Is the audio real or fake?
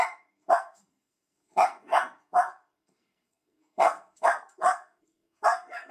fake